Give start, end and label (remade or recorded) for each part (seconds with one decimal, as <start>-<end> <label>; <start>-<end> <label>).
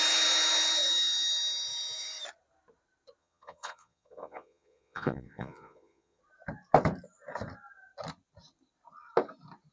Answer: 0.0-3.2 recorded; 3.2-6.2 remade; 6.2-9.7 recorded